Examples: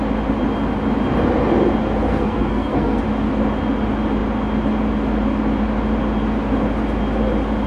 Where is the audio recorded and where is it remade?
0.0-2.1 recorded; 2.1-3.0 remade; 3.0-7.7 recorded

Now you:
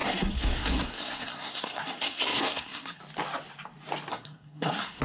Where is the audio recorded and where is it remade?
0.0-3.0 remade; 3.0-4.1 recorded; 4.1-5.0 remade

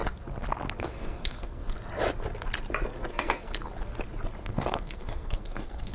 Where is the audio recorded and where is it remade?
0.0-0.8 recorded; 0.8-1.6 remade; 1.6-3.1 recorded; 3.1-3.5 remade; 3.5-4.4 recorded; 4.4-5.9 remade